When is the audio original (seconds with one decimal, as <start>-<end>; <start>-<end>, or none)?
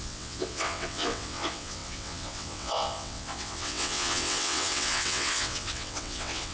none